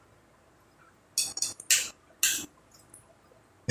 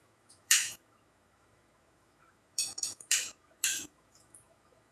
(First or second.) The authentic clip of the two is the first